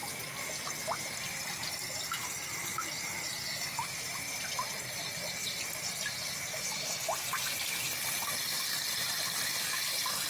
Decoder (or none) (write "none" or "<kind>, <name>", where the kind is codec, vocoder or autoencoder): none